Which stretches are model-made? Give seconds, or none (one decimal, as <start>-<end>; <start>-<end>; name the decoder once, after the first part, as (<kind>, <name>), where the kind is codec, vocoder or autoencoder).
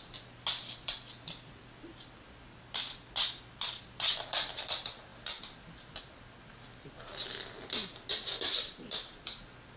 none